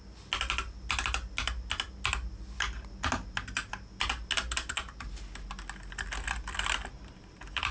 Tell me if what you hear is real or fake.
real